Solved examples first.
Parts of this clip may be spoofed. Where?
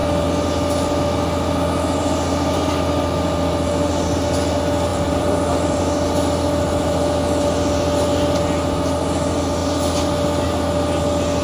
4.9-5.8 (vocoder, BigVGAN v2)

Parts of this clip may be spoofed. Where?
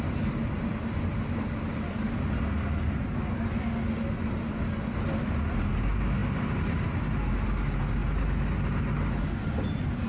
none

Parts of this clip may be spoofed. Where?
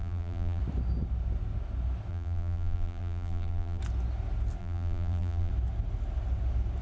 0.0-0.6 (vocoder, BigVGAN v2); 2.1-3.8; 4.6-5.5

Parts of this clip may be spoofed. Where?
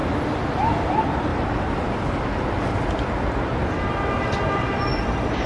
0.5-1.3 (vocoder, BigVGAN v2); 4.6-5.5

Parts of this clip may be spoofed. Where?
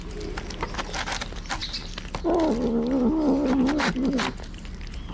none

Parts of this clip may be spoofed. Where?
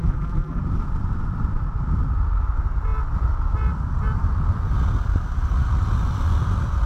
0.0-0.6 (vocoder, BigVGAN v2)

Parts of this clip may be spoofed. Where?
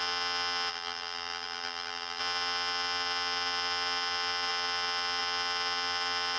0.7-2.2 (vocoder, BigVGAN v2)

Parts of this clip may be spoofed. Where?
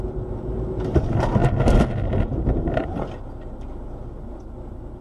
none